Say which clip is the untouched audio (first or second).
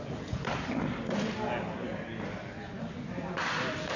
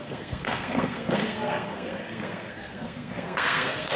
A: first